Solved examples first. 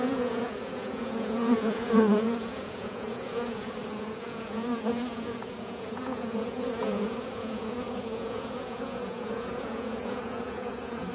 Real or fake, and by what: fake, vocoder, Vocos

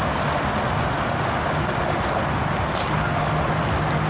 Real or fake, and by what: real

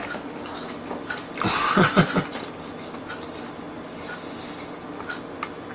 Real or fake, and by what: real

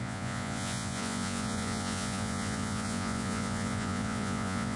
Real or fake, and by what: fake, vocoder, Vocos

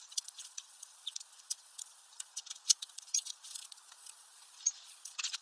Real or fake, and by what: fake, vocoder, Vocos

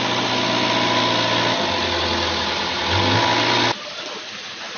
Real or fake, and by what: real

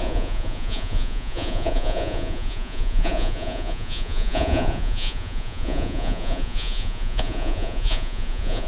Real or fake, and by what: fake, vocoder, Vocos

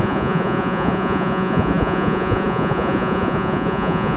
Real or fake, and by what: fake, vocoder, Vocos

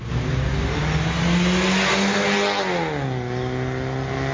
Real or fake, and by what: real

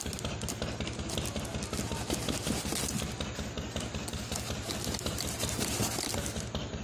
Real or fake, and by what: real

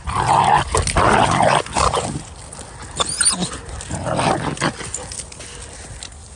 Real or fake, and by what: real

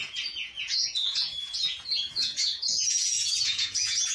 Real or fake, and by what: fake, vocoder, Vocos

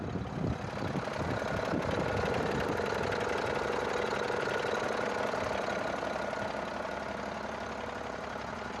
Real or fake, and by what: real